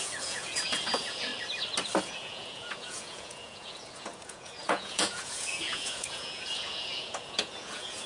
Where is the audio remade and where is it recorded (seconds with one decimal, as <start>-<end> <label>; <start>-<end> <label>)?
0.0-1.3 remade; 1.3-2.0 recorded; 2.0-8.1 remade